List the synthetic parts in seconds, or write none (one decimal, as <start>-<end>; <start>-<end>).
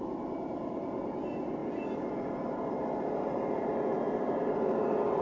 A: none